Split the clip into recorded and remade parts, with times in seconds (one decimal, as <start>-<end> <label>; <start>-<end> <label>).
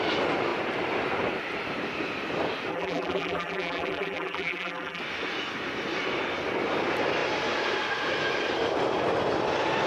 0.0-2.7 recorded; 2.7-5.0 remade; 5.0-9.9 recorded